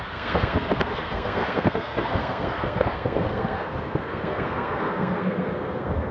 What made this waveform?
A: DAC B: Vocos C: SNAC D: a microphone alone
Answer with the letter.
C